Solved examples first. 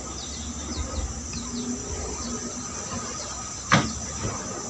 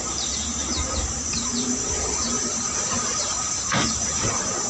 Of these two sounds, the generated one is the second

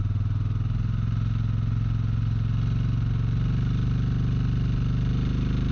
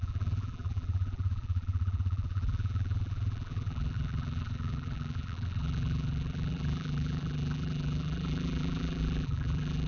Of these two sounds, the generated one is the second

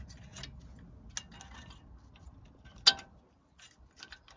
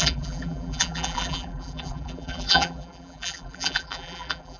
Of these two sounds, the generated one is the second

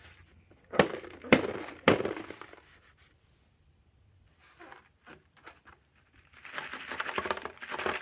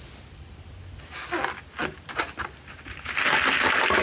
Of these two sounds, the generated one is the first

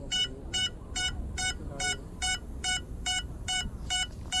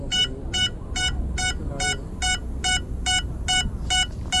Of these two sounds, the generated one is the first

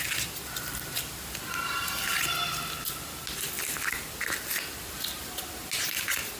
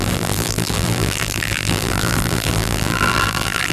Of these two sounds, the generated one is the second